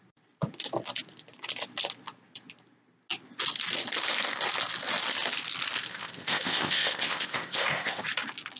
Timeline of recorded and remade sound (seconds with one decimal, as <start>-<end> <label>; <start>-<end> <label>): 0.0-5.9 recorded; 5.9-8.0 remade; 8.0-8.6 recorded